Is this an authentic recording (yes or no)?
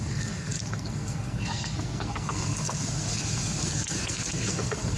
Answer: no